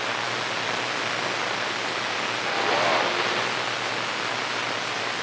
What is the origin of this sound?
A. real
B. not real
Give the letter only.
A